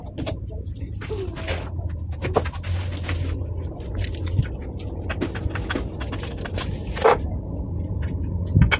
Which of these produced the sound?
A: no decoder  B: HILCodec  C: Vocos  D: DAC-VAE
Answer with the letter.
A